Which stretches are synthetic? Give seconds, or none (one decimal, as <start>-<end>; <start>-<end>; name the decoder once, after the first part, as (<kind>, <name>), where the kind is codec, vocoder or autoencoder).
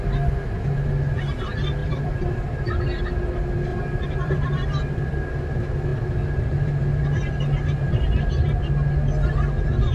1.8-3.0 (vocoder, BigVGAN v2); 3.7-4.8